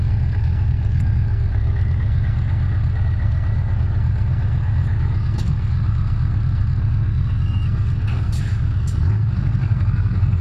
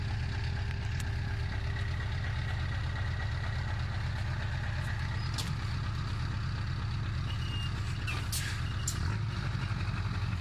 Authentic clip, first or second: second